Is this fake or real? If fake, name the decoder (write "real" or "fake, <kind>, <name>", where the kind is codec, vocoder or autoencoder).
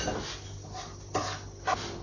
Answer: real